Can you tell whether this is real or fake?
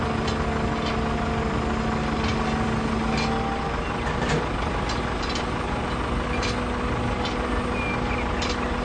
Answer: real